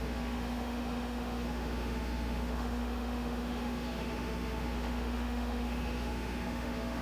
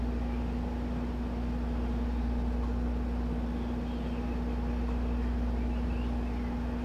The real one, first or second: second